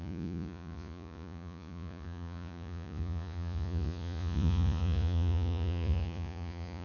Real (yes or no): no